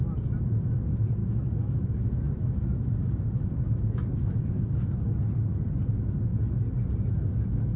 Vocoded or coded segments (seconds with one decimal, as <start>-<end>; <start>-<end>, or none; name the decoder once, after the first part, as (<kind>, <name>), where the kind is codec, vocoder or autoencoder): 1.2-5.0 (autoencoder, DAC-VAE)